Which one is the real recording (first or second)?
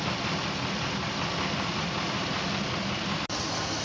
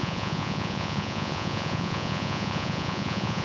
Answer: first